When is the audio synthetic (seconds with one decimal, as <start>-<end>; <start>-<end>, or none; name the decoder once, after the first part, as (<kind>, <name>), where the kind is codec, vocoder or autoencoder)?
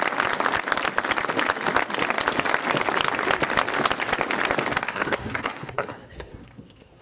4.8-7.0 (codec, SNAC)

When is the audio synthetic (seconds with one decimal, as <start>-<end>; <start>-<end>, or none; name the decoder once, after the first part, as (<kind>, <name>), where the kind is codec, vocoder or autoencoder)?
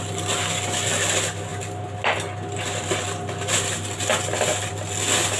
none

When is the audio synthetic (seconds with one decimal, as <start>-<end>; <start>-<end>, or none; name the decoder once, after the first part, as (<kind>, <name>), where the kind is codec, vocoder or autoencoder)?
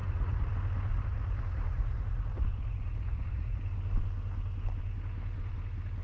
0.0-0.5 (vocoder, Vocos); 0.9-3.6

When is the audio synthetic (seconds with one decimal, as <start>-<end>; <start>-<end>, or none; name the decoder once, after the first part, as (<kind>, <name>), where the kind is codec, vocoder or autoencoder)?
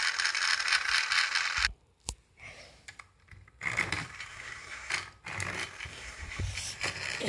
4.3-4.9 (codec, SNAC); 5.9-6.4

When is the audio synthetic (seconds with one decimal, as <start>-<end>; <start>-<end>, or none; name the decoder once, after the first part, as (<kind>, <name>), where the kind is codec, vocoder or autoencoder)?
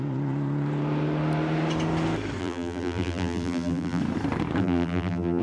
2.4-4.0 (vocoder, BigVGAN v2); 4.6-5.4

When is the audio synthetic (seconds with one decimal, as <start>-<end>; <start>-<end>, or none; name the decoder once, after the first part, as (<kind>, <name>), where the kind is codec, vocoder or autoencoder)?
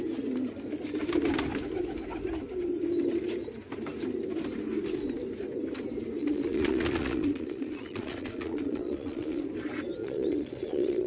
6.2-9.4 (vocoder, Vocos); 10.0-11.1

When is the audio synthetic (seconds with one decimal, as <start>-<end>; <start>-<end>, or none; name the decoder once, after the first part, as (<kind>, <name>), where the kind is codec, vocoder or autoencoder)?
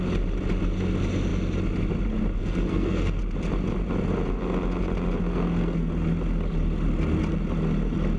2.4-3.2 (codec, SNAC); 5.3-5.9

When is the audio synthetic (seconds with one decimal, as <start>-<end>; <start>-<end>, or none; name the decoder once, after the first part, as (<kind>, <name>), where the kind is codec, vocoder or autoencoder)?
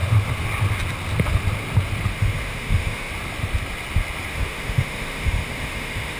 2.1-3.1 (autoencoder, DAC-VAE); 4.3-6.2